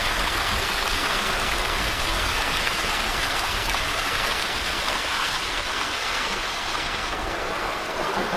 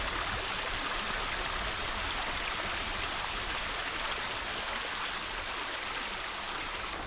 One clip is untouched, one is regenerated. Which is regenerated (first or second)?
first